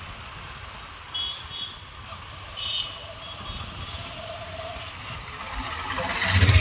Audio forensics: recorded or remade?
recorded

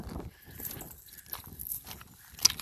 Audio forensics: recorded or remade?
recorded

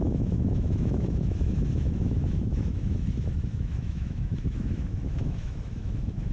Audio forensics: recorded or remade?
remade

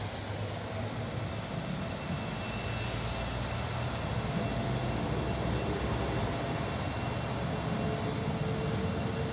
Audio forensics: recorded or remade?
recorded